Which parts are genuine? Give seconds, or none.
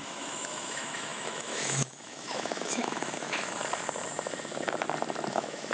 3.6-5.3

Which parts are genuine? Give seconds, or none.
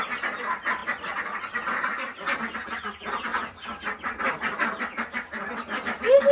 0.0-6.3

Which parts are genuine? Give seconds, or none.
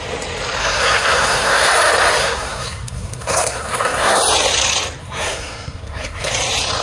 0.0-0.6; 1.7-2.2; 4.2-5.0; 6.3-6.8